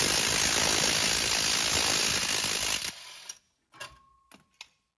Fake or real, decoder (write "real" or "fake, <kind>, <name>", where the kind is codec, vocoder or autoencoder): real